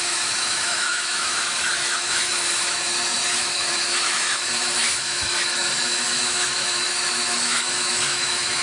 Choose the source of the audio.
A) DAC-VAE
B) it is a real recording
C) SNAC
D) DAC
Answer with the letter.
A